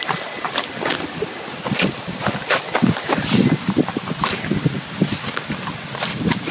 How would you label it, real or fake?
real